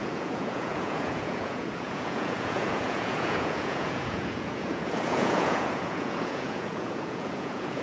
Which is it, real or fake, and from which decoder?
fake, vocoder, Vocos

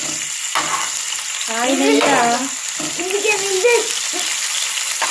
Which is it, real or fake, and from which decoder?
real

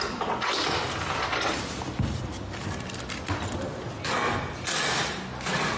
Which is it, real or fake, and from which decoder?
real